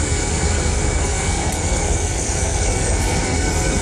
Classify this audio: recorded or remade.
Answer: remade